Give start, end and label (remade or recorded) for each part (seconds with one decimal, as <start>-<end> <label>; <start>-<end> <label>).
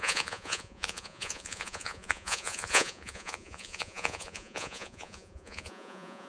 0.0-6.3 remade